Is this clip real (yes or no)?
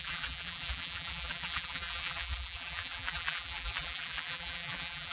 no